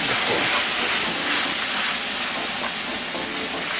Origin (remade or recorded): recorded